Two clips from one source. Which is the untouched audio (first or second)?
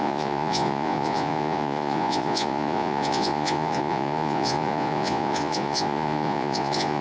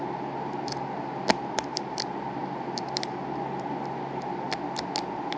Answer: second